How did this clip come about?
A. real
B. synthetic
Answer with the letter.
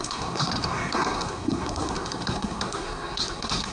B